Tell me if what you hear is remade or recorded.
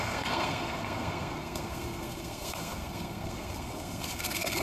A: remade